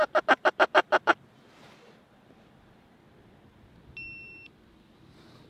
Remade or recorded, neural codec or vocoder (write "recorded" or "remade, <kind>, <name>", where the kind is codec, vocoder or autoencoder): recorded